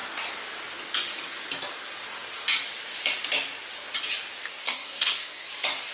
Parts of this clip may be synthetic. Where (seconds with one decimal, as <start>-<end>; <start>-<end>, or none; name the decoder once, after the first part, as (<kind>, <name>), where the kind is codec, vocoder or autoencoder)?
4.5-5.5 (codec, SNAC)